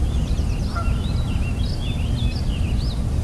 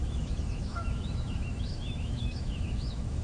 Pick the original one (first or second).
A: first